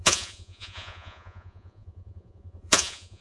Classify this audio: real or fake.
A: fake